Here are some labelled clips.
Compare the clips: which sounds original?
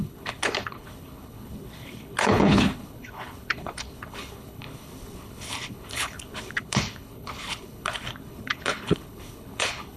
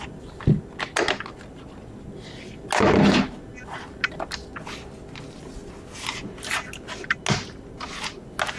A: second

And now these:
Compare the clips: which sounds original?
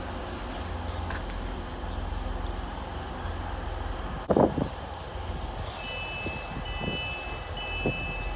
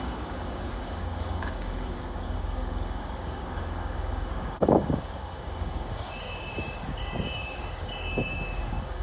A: first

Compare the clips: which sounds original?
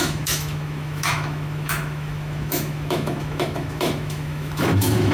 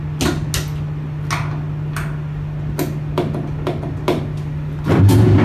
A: second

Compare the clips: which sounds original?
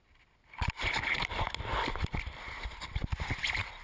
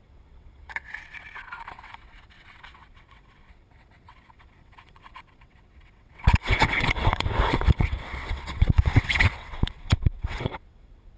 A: first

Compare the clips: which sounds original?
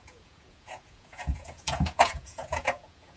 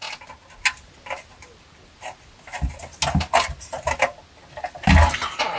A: second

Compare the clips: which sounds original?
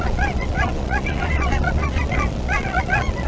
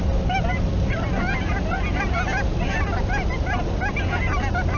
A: second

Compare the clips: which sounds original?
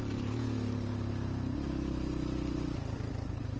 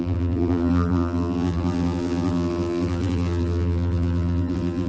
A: first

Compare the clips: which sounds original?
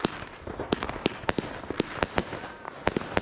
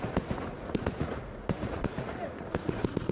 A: first